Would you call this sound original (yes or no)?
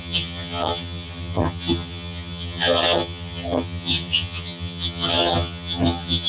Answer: no